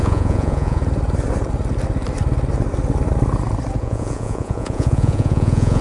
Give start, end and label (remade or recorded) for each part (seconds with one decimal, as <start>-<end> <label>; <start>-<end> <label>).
0.0-0.8 remade; 0.8-3.8 recorded; 3.8-5.8 remade